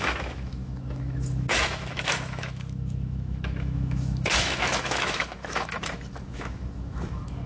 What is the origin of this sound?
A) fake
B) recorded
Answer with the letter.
A